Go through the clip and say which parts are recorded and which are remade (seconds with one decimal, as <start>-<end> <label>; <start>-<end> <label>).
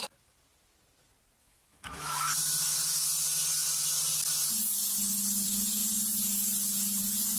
0.0-1.4 recorded; 1.4-2.1 remade; 2.1-7.4 recorded